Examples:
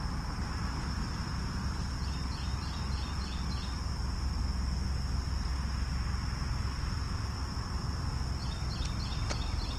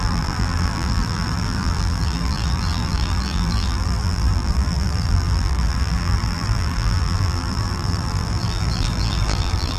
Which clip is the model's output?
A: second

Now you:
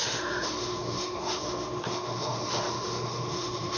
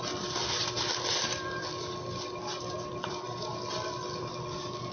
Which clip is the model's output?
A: first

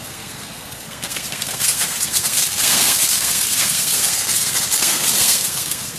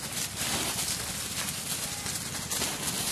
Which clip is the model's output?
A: first